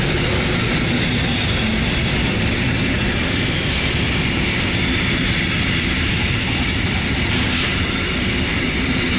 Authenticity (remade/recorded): recorded